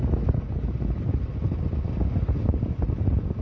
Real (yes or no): yes